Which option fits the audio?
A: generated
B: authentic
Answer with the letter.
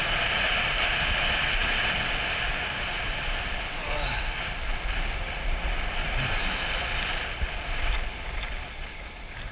A